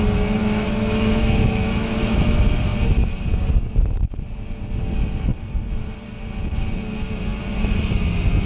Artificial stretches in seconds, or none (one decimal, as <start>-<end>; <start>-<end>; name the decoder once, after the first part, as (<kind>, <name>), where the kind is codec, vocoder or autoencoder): 0.4-2.2 (autoencoder, DAC-VAE)

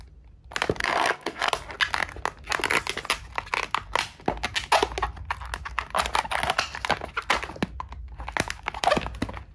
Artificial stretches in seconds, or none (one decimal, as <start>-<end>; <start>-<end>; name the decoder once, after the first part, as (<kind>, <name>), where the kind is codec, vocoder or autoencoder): 0.8-1.5 (codec, SNAC)

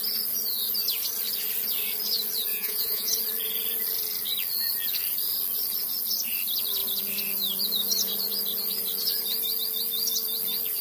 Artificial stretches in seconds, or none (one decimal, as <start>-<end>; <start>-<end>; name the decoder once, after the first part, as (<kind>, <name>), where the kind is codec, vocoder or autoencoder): 2.5-3.1 (vocoder, Vocos)

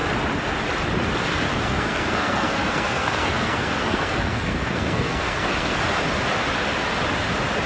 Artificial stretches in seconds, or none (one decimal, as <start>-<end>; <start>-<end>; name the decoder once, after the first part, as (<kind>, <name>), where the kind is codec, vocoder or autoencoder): 1.5-5.8 (codec, SNAC)

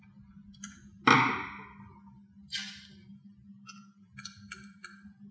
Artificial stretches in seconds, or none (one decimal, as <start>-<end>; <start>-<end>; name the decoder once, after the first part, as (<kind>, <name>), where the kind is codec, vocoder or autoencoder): none

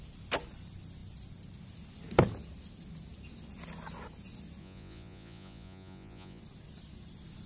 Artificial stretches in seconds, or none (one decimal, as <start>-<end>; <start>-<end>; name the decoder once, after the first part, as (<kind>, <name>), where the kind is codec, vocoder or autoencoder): 4.6-6.4 (vocoder, Vocos)

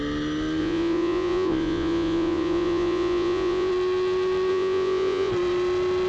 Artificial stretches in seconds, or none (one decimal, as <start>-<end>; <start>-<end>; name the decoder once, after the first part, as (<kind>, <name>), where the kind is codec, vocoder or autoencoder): 0.6-3.7 (vocoder, Vocos); 4.5-5.3

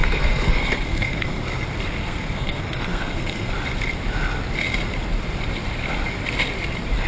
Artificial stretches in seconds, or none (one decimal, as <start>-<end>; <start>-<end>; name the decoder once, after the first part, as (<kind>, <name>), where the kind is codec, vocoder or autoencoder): 0.0-1.4 (codec, SNAC); 2.0-3.5